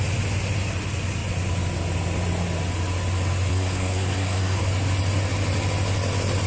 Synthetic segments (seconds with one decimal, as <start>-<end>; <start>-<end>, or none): 3.5-4.6